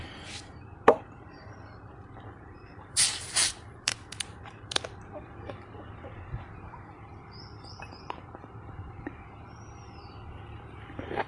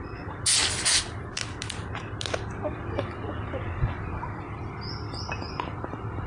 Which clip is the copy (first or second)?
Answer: first